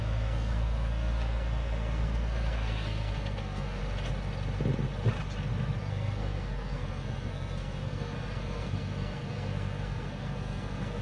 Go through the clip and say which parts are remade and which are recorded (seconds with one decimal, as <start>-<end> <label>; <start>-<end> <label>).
0.0-3.8 remade; 3.8-5.8 recorded; 5.8-11.0 remade